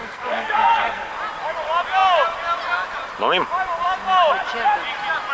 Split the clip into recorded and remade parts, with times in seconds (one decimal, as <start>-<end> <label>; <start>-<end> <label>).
0.0-1.1 remade; 1.1-5.3 recorded

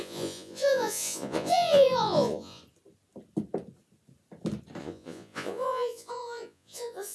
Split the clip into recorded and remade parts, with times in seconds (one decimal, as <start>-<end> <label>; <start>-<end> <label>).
0.0-2.6 remade; 2.6-4.8 recorded; 4.8-7.1 remade

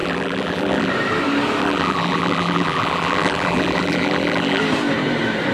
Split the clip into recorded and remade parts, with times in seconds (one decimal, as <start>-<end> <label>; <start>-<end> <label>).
0.0-0.9 remade; 0.9-1.6 recorded; 1.6-4.6 remade; 4.6-5.5 recorded

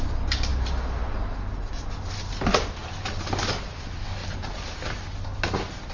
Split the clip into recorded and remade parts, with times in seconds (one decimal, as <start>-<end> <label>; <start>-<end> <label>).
0.0-5.9 recorded

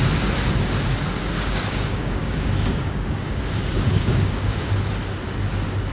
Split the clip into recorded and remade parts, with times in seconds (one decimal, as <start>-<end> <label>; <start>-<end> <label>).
0.0-1.2 recorded; 1.2-4.7 remade; 4.7-5.9 recorded

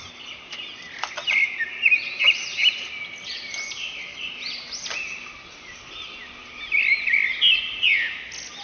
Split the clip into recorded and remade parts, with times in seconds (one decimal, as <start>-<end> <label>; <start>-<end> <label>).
0.0-8.6 recorded

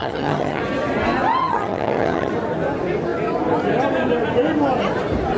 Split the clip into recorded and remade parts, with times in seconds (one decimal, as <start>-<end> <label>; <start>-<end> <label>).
0.0-0.6 remade; 0.6-1.4 recorded; 1.4-2.3 remade; 2.3-5.4 recorded

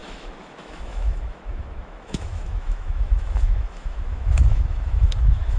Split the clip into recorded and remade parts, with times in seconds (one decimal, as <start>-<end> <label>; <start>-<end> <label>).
0.0-5.6 remade